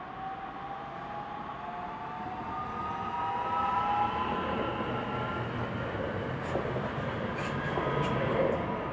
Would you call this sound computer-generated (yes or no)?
no